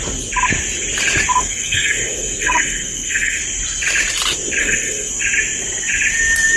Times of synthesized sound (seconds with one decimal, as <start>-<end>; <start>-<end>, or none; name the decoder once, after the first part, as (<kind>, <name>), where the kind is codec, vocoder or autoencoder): 1.4-3.4 (codec, SNAC); 4.6-5.1

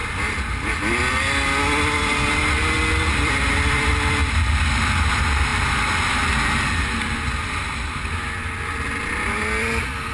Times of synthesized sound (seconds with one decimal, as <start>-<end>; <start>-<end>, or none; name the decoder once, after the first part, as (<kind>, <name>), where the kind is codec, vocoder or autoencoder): none

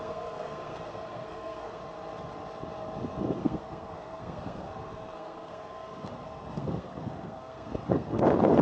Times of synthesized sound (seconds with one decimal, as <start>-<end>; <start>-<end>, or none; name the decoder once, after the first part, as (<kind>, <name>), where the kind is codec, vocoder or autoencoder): 0.0-1.8 (codec, SNAC); 3.4-8.6